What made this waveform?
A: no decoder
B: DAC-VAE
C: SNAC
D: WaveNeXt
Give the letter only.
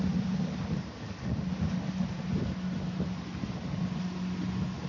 A